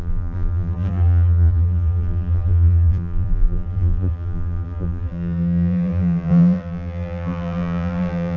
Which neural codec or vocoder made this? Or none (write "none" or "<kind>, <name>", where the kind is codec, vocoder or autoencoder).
vocoder, BigVGAN v2